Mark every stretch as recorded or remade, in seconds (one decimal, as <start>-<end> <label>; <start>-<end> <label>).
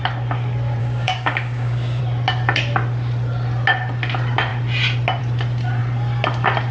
0.0-0.8 recorded; 0.8-2.0 remade; 2.0-6.7 recorded